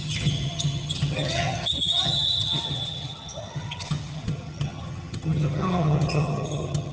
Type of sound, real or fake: fake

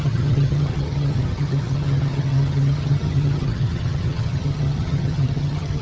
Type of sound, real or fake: fake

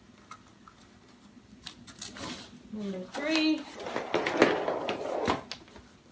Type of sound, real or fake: real